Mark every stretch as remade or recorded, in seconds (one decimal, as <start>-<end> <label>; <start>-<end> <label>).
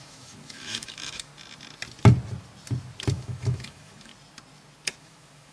0.0-1.3 remade; 1.3-3.1 recorded; 3.1-4.1 remade; 4.1-5.0 recorded; 5.0-5.5 remade